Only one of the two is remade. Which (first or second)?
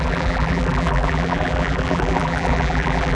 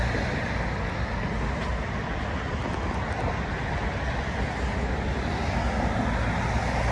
first